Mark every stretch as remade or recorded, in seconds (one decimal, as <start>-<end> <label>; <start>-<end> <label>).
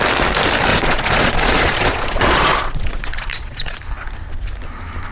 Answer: 0.0-0.7 recorded; 0.7-3.8 remade; 3.8-5.1 recorded